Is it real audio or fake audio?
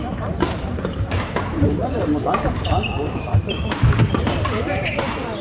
fake